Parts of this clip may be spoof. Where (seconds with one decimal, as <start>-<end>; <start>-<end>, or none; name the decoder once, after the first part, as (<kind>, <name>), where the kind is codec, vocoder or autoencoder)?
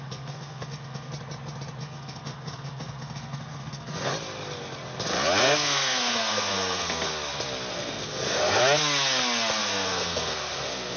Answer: 0.0-1.1 (codec, SNAC); 1.8-4.1; 5.4-7.1; 7.7-8.6; 9.6-11.0